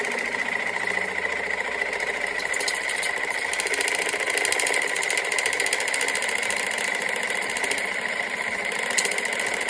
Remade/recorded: recorded